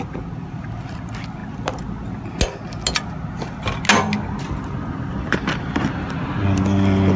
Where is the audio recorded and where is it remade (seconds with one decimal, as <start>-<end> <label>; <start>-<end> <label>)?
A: 0.0-7.2 recorded